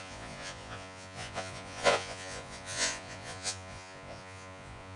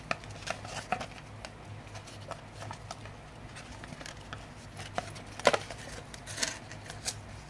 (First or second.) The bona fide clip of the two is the second